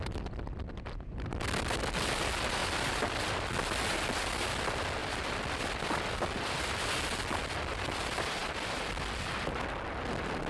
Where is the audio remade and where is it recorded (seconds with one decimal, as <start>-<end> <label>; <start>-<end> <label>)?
0.0-2.6 recorded; 2.6-3.2 remade; 3.2-5.0 recorded; 5.0-7.0 remade; 7.0-10.5 recorded